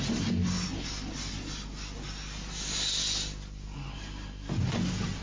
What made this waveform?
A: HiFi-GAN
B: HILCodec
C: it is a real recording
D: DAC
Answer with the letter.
C